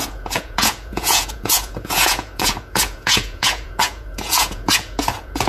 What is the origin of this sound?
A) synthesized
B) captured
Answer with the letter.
A